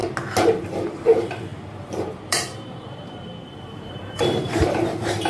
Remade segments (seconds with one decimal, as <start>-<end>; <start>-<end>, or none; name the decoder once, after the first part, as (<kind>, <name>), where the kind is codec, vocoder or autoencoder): 0.6-5.3 (vocoder, BigVGAN v2)